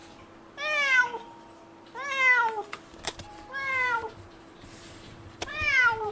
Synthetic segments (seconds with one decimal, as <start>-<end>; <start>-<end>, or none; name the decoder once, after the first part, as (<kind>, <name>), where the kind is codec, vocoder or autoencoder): 3.3-6.1 (vocoder, BigVGAN v2)